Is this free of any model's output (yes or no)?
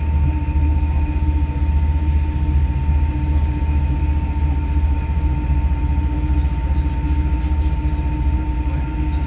yes